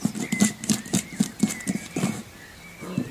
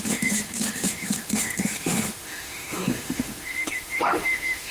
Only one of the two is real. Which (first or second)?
first